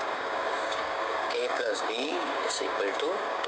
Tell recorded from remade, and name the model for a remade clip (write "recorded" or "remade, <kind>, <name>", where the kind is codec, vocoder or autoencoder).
remade, codec, DAC